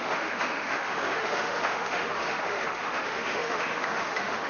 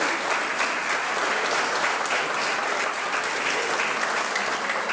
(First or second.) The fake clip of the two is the first